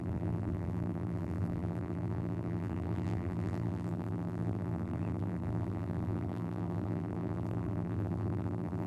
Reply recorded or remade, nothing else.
remade